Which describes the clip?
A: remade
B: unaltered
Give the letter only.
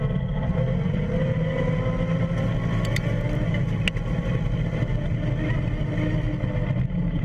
B